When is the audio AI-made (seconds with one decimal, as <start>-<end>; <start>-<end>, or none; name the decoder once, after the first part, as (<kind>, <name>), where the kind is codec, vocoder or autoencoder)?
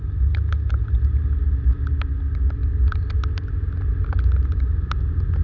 none